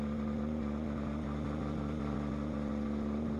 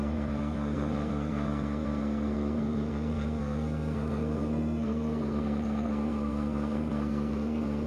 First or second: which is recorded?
first